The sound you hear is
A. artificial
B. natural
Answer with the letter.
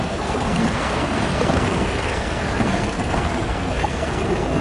A